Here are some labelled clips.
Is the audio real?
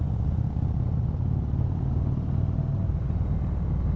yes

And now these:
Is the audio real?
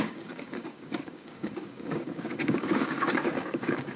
no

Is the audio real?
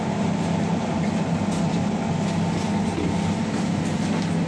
yes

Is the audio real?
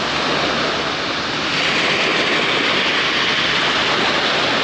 yes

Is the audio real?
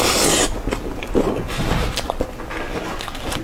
yes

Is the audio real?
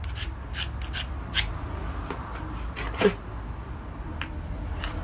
yes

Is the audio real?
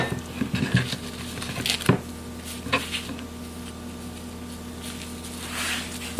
yes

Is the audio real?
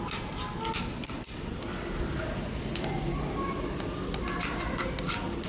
yes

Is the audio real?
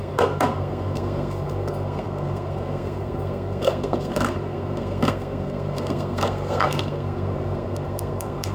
no